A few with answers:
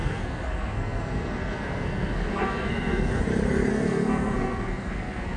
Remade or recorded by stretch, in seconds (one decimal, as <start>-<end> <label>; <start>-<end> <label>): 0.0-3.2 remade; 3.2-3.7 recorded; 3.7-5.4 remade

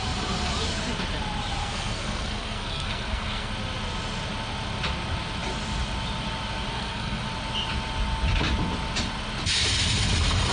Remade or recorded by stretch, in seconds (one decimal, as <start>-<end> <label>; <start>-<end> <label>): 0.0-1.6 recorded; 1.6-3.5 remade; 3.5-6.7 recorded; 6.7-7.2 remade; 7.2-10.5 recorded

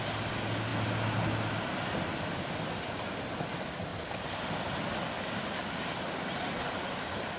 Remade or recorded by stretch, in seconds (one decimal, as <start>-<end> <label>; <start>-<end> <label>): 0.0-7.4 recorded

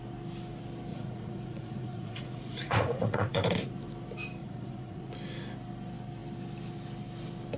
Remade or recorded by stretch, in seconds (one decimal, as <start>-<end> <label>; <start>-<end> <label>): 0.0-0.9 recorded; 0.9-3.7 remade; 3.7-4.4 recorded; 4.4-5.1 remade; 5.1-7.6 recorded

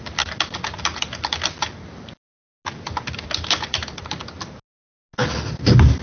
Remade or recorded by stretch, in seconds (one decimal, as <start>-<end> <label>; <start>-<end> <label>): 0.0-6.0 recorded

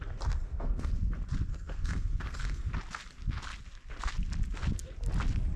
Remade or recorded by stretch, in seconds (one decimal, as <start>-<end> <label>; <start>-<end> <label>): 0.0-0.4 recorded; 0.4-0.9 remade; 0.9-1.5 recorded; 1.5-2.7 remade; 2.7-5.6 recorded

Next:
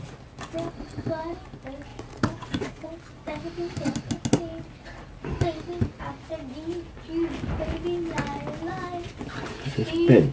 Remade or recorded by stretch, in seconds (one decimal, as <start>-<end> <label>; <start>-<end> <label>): 0.0-1.9 recorded; 1.9-2.9 remade; 2.9-10.3 recorded